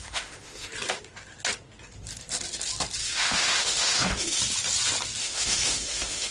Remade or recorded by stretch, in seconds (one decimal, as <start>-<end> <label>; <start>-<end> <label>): 0.0-0.7 remade; 0.7-3.0 recorded; 3.0-4.4 remade; 4.4-5.2 recorded; 5.2-6.3 remade

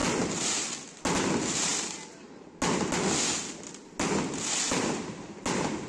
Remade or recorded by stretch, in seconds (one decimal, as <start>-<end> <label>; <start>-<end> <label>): 0.0-5.9 recorded

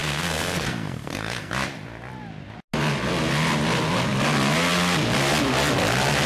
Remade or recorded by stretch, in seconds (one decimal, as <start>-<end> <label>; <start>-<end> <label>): 0.0-1.5 remade; 1.5-6.3 recorded

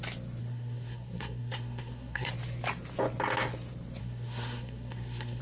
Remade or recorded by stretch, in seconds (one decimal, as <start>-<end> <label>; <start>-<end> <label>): 0.0-0.4 recorded; 0.4-2.3 remade; 2.3-4.0 recorded; 4.0-5.4 remade

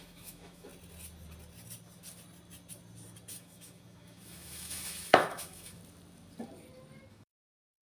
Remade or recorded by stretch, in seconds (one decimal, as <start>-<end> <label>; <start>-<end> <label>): 0.0-0.7 remade; 0.7-3.3 recorded; 3.3-5.8 remade; 5.8-7.1 recorded; 7.1-7.8 remade